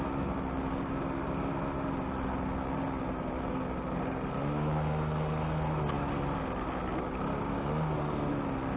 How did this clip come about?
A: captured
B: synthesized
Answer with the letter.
A